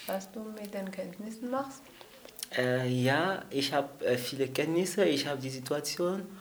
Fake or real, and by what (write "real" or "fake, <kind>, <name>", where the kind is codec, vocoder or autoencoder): real